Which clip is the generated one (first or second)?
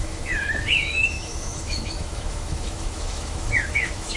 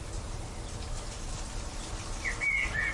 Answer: first